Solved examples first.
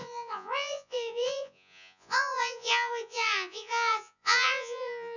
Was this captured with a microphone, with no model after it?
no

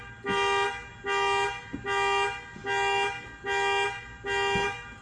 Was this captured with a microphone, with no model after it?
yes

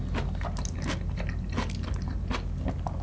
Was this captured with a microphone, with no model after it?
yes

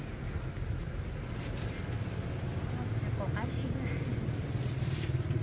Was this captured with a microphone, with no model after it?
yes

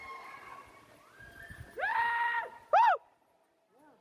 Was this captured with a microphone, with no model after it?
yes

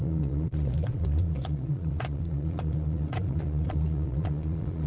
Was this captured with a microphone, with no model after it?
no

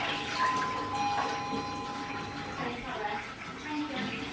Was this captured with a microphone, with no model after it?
yes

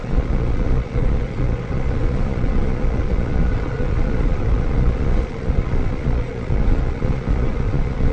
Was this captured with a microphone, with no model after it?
no